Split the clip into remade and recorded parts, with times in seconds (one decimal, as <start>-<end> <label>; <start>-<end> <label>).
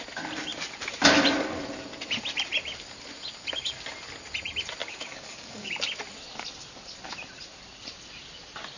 0.0-4.8 recorded; 4.8-5.7 remade; 5.7-8.8 recorded